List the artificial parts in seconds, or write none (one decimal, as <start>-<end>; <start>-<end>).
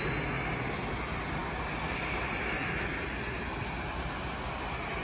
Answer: none